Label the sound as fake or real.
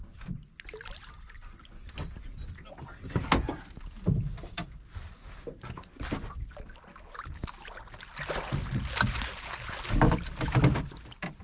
real